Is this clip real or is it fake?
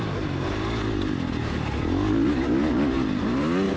real